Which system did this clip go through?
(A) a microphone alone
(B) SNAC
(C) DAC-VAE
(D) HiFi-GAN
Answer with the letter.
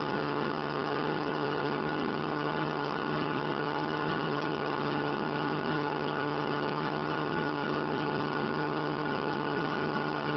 D